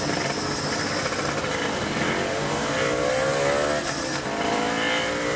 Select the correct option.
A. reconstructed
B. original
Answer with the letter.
B